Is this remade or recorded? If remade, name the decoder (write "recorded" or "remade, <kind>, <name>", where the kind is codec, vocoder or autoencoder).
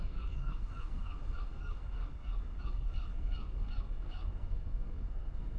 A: remade, codec, SNAC